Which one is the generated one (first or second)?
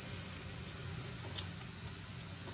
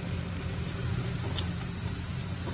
first